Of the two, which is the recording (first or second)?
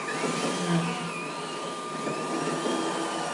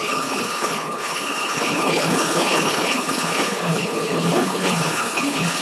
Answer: first